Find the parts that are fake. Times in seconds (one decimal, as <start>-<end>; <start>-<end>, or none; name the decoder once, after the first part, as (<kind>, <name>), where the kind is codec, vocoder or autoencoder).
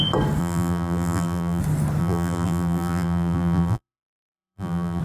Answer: 0.4-1.6 (vocoder, BigVGAN v2); 2.0-5.0